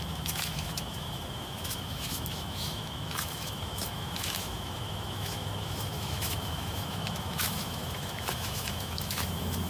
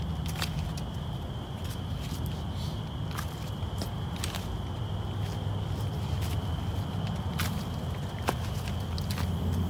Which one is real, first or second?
second